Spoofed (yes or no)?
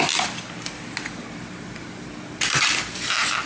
no